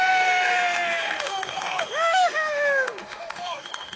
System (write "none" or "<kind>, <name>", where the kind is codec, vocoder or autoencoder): autoencoder, DAC-VAE